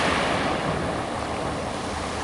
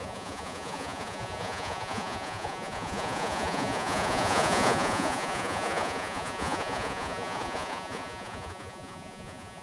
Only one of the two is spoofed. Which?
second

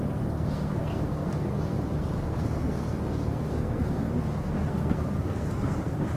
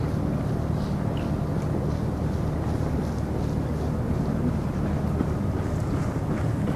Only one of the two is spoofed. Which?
first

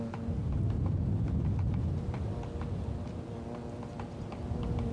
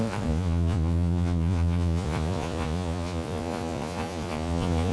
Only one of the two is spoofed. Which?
second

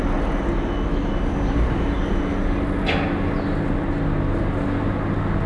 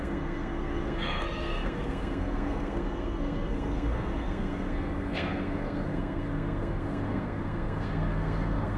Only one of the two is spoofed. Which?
second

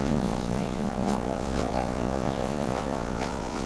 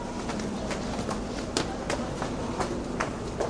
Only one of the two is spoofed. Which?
first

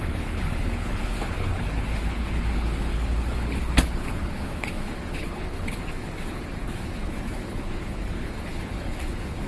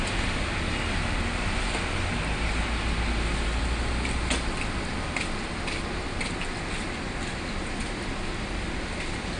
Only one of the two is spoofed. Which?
first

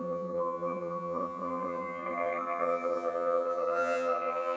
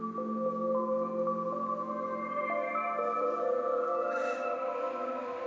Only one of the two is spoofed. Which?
first